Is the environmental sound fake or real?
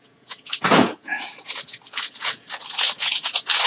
fake